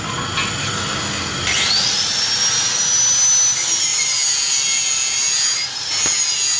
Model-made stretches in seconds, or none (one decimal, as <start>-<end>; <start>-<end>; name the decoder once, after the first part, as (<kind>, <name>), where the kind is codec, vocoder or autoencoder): none